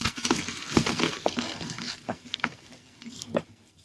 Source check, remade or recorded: remade